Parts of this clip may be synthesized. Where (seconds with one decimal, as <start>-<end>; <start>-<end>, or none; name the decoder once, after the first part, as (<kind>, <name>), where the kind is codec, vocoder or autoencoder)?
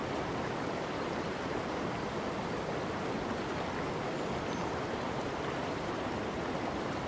none